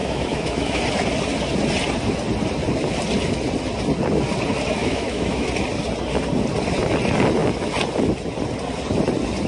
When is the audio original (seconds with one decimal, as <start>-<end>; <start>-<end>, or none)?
0.8-4.8; 5.5-9.5